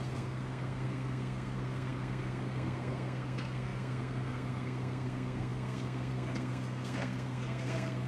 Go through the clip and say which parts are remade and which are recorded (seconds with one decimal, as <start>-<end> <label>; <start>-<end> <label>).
0.0-8.1 remade